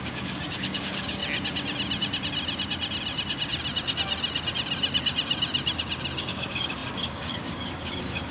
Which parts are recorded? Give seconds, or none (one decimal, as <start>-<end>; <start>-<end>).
1.2-6.2